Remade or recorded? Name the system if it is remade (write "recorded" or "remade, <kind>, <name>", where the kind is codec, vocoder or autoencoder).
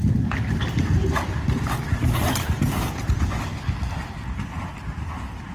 recorded